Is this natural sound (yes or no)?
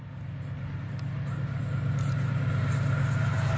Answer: yes